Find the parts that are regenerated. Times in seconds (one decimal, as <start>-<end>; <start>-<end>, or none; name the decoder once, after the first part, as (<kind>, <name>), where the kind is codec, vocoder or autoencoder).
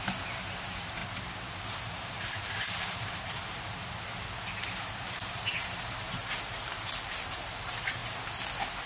0.0-1.0 (vocoder, BigVGAN v2); 1.6-8.0